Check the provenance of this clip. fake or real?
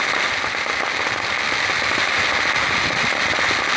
real